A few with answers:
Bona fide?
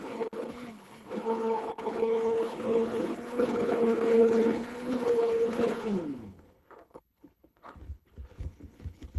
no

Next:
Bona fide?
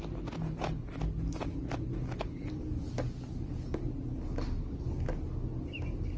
yes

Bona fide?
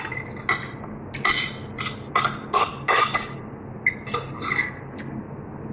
yes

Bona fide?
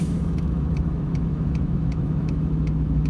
no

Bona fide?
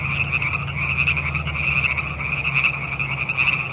yes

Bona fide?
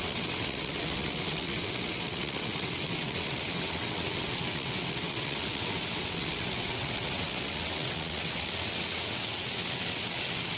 no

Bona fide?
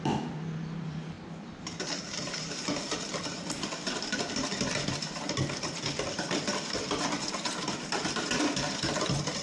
no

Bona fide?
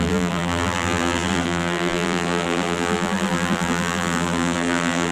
no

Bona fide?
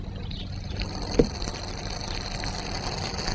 yes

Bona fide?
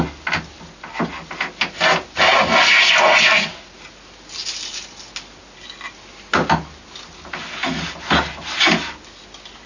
yes